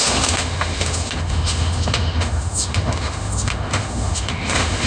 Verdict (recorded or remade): remade